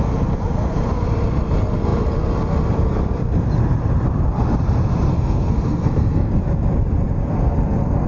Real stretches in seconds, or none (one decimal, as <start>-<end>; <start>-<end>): 0.0-5.1; 6.4-8.1